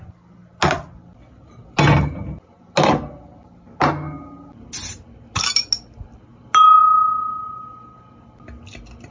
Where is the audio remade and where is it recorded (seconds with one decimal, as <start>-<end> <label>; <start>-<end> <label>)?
0.0-9.1 recorded